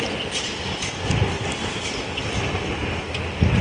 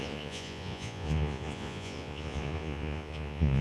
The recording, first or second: first